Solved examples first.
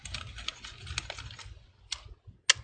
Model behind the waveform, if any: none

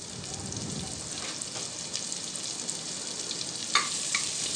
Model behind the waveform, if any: none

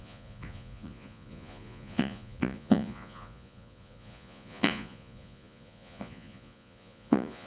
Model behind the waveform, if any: vocoder, Vocos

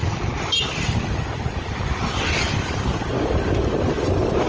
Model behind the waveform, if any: none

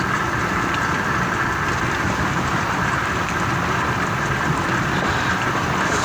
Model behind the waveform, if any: vocoder, BigVGAN v2